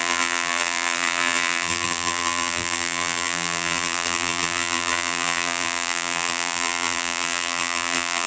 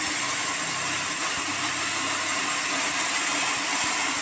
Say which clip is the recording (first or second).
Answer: second